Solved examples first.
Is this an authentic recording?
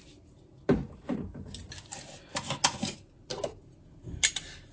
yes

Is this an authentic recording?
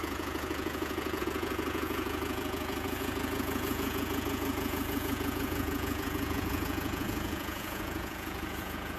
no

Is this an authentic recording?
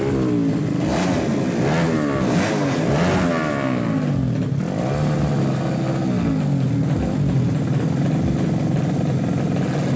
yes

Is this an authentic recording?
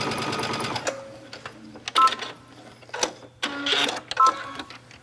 yes